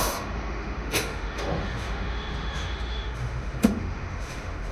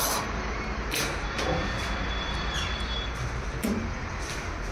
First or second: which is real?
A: second